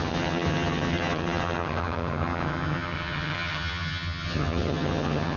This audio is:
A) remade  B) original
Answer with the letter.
A